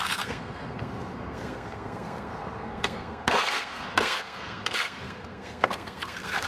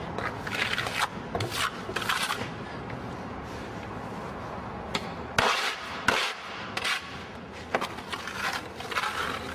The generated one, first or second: first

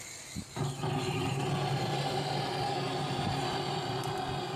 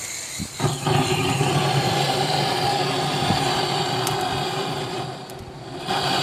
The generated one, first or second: second